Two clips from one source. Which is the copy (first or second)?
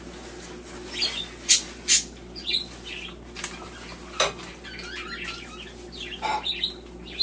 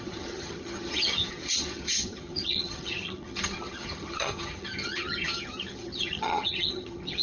second